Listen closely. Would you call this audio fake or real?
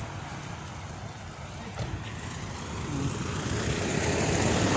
real